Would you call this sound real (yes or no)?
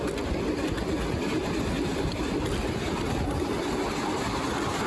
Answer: yes